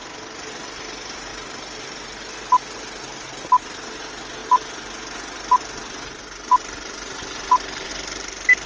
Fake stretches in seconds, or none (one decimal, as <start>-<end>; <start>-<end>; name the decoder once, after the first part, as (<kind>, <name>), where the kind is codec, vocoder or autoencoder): none